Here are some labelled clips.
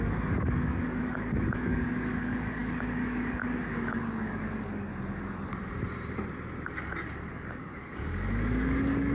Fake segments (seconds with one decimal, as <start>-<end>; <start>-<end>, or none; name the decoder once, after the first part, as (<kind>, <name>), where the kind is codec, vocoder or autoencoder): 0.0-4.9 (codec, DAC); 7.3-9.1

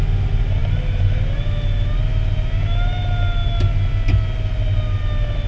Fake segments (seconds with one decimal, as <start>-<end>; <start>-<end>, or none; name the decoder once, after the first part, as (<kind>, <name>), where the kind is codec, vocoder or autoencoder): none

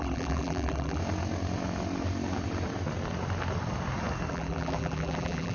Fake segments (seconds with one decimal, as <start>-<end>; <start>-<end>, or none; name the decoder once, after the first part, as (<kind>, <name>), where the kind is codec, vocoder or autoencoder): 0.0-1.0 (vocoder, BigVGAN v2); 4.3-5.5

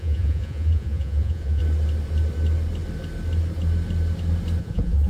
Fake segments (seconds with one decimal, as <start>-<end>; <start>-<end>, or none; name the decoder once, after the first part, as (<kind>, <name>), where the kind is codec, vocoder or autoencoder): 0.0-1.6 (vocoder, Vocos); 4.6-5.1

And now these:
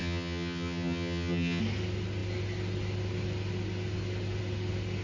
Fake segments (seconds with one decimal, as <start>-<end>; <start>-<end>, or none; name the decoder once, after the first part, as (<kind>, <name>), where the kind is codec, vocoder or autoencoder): 0.0-1.6 (vocoder, HiFi-GAN)